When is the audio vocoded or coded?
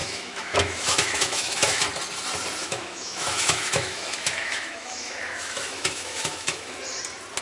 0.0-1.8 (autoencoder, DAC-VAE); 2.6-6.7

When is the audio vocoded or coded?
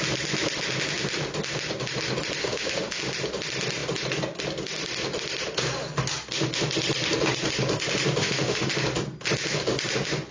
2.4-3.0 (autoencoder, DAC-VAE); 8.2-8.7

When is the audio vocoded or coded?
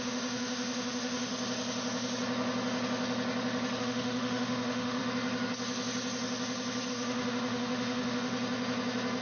0.0-1.3 (autoencoder, DAC-VAE); 3.8-5.0; 6.9-8.3